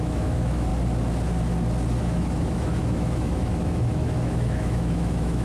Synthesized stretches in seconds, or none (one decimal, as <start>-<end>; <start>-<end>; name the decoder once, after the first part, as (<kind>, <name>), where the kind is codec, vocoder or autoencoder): 0.0-0.7 (autoencoder, DAC-VAE); 2.0-5.4